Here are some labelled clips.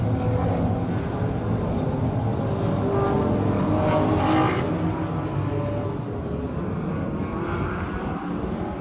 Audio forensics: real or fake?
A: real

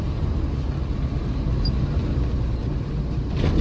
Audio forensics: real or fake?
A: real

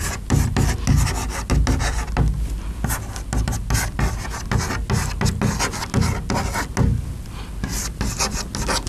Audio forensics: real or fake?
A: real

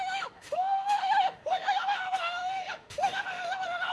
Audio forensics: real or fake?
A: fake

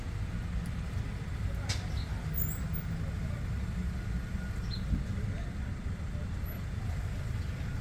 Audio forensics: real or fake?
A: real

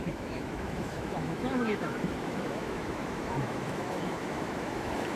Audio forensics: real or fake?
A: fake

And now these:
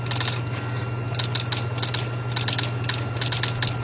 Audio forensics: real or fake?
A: real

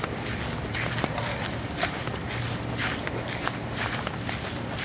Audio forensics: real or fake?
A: real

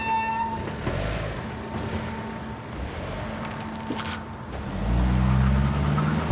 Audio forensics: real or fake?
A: real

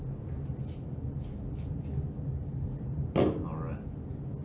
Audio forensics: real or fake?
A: real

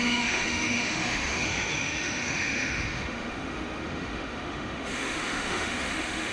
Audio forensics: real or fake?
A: fake